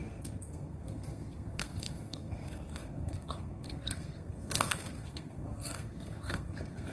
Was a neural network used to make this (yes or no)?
yes